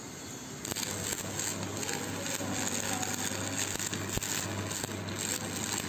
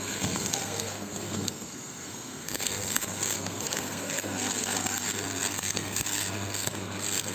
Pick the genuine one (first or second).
first